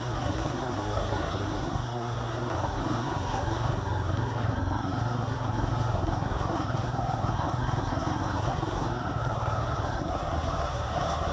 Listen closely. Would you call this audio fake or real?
fake